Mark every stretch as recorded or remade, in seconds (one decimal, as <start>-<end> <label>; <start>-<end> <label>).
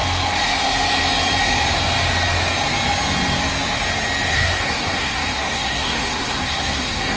0.0-4.3 recorded; 4.3-7.2 remade